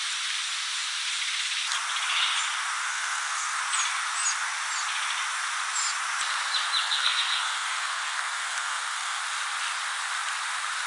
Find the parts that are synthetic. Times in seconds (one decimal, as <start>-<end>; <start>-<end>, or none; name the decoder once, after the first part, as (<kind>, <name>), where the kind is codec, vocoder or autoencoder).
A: 2.8-3.6 (codec, SNAC); 6.8-9.2